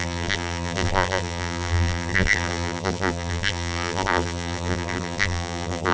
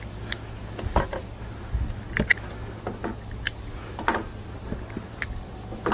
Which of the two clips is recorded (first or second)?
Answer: second